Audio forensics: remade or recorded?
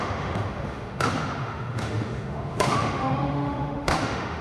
remade